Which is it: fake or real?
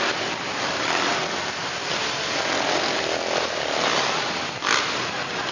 real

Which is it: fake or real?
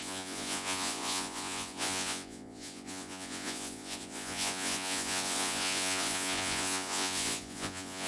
fake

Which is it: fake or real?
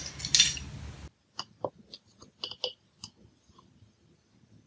real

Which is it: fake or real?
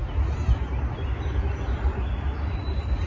real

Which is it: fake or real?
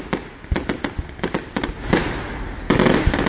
real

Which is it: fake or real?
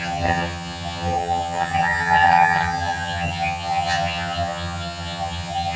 fake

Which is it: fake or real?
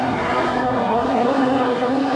fake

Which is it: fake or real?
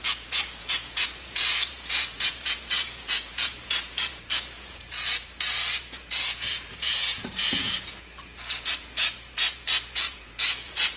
fake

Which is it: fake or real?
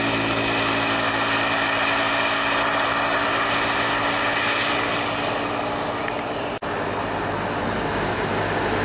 real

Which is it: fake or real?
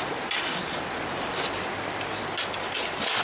real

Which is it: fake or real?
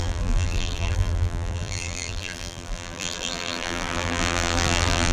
fake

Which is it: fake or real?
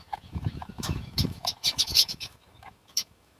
fake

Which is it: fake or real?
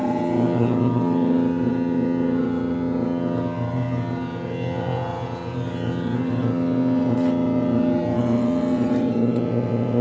fake